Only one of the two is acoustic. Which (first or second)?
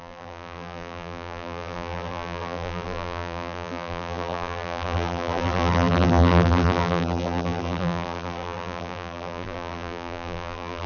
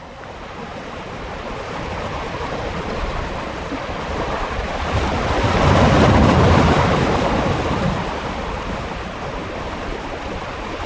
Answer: second